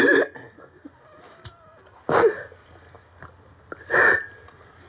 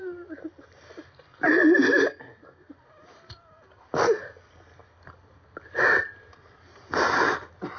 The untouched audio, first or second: first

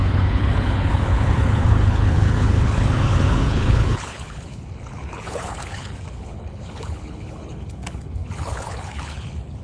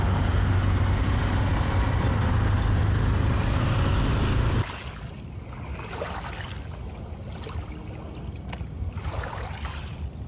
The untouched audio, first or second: second